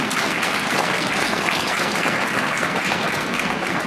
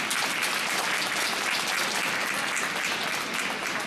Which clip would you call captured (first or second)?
second